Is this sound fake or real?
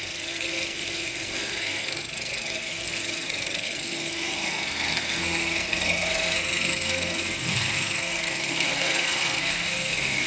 fake